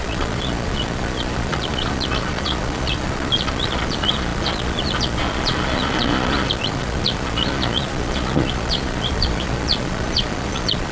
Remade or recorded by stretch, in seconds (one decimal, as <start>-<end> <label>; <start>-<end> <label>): 0.0-10.9 remade